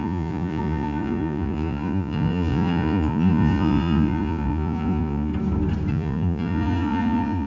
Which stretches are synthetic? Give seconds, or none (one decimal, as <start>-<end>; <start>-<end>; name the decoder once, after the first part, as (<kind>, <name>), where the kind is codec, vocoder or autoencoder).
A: 0.0-5.3 (vocoder, Vocos); 5.9-7.5